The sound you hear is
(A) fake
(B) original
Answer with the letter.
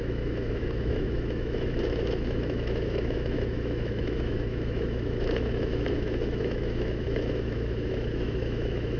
A